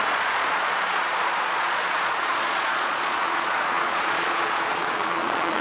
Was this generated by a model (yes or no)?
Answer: yes